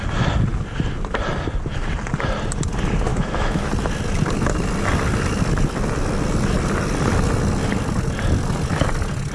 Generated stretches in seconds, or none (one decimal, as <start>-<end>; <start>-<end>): 3.1-3.7